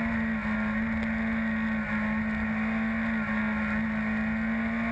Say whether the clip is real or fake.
real